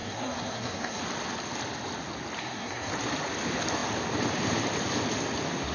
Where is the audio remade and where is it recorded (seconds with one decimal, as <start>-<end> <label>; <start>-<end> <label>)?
0.0-1.0 remade; 1.0-2.4 recorded; 2.4-2.9 remade; 2.9-5.7 recorded